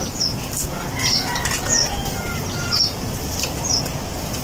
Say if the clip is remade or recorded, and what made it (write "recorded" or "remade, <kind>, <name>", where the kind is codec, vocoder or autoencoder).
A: recorded